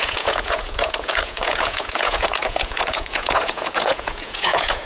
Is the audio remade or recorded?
remade